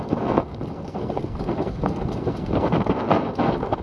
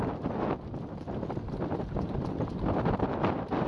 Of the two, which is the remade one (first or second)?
first